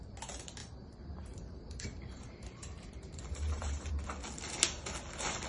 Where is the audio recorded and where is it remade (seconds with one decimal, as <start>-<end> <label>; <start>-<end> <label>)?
0.0-0.6 recorded; 0.6-3.9 remade; 3.9-5.5 recorded